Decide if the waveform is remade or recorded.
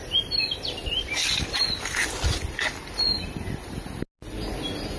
recorded